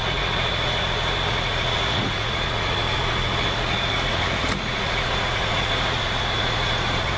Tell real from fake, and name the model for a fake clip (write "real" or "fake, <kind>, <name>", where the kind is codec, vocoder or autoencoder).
fake, vocoder, Vocos